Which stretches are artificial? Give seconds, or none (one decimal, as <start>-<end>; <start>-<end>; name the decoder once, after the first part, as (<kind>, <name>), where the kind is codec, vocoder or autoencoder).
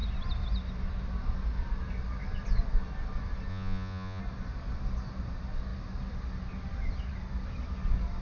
3.5-4.2 (vocoder, Vocos)